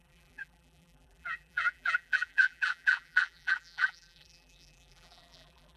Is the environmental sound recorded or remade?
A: remade